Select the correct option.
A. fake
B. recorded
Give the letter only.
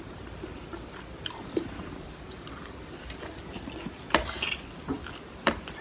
B